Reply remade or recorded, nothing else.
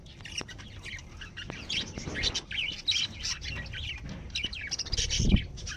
recorded